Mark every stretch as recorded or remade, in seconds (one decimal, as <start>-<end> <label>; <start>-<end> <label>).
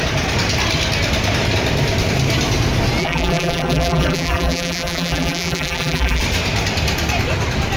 0.0-3.0 recorded; 3.0-6.2 remade; 6.2-7.8 recorded